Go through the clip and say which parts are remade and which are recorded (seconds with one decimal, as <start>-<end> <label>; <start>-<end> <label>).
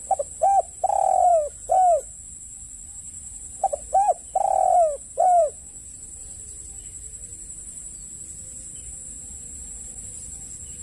0.0-1.3 recorded; 1.3-2.9 remade; 2.9-5.3 recorded; 5.3-5.9 remade; 5.9-10.8 recorded